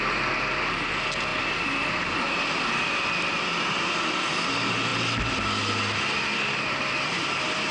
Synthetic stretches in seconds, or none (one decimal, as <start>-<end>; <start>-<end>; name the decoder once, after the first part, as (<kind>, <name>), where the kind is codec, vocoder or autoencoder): none